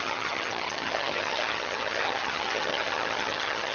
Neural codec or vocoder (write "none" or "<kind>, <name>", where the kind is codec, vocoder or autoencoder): vocoder, HiFi-GAN